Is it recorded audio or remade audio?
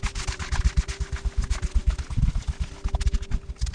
recorded